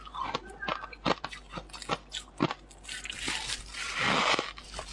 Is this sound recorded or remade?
recorded